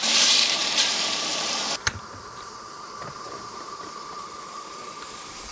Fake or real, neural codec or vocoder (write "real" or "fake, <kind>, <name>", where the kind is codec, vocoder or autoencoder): fake, vocoder, BigVGAN v2